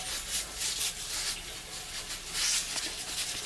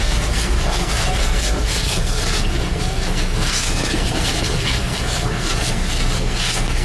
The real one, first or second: first